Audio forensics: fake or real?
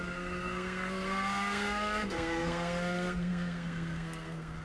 fake